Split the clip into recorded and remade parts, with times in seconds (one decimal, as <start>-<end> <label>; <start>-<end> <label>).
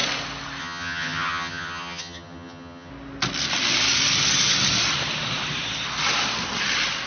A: 0.0-0.6 recorded; 0.6-2.9 remade; 2.9-7.1 recorded